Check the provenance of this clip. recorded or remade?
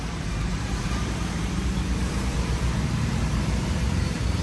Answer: remade